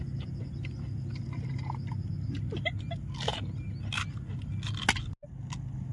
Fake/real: real